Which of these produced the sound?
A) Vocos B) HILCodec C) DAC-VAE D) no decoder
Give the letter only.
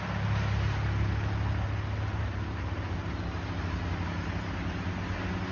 D